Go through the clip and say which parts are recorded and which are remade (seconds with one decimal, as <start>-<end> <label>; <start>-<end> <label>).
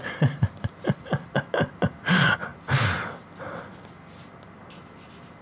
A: 0.0-5.4 recorded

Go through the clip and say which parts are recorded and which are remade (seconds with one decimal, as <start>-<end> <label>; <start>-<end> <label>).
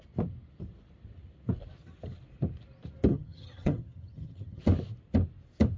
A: 0.0-3.1 recorded; 3.1-4.6 remade; 4.6-5.8 recorded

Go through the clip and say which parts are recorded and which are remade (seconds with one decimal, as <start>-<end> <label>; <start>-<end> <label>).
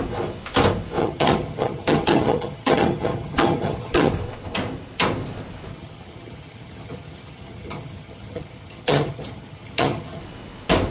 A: 0.0-1.0 recorded; 1.0-4.1 remade; 4.1-5.7 recorded; 5.7-10.2 remade; 10.2-10.9 recorded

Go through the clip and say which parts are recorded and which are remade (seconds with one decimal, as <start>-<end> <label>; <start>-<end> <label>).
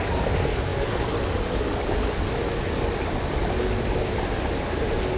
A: 0.0-5.2 recorded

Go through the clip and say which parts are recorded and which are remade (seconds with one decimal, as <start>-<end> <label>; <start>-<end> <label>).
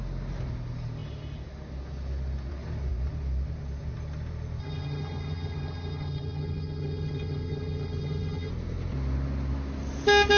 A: 0.0-4.6 recorded; 4.6-8.5 remade; 8.5-10.4 recorded